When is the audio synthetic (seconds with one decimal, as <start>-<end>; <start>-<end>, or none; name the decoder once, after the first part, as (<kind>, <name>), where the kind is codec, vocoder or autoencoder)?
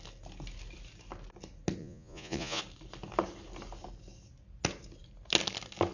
1.8-2.6 (vocoder, Vocos)